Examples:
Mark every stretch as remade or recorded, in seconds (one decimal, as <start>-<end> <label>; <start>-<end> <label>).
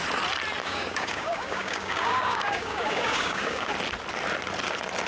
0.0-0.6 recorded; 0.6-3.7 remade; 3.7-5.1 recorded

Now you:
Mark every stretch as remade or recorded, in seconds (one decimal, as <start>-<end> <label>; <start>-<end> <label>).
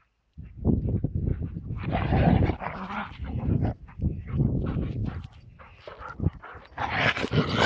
0.0-1.3 recorded; 1.3-2.5 remade; 2.5-7.7 recorded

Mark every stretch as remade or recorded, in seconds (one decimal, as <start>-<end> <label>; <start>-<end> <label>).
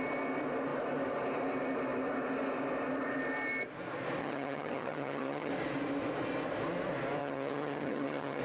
0.0-4.2 recorded; 4.2-5.5 remade; 5.5-7.2 recorded; 7.2-8.4 remade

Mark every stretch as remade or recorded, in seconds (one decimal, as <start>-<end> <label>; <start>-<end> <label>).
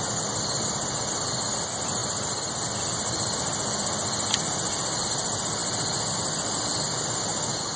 0.0-7.8 recorded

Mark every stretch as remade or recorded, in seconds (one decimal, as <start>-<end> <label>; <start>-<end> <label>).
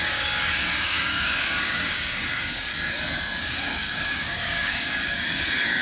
0.0-2.7 remade; 2.7-3.4 recorded; 3.4-5.8 remade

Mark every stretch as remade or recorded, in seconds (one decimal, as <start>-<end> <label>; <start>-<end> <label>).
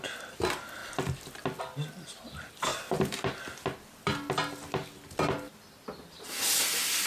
0.0-2.7 recorded; 2.7-3.3 remade; 3.3-7.1 recorded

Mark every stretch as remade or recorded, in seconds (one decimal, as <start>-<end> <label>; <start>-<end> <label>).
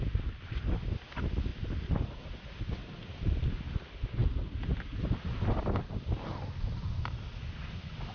0.0-8.1 recorded